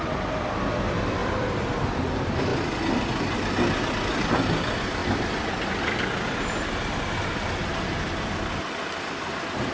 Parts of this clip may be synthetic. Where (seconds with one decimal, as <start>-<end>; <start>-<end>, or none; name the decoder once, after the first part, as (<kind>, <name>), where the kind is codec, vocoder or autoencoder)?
1.2-1.9 (vocoder, BigVGAN v2); 2.5-3.9; 5.0-5.5